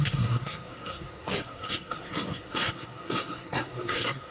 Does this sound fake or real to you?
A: fake